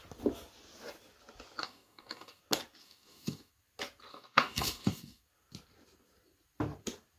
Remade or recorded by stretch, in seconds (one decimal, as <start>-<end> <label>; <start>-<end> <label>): 0.0-1.6 recorded; 1.6-2.4 remade; 2.4-2.8 recorded; 2.8-3.5 remade; 3.5-4.1 recorded; 4.1-5.2 remade; 5.2-7.2 recorded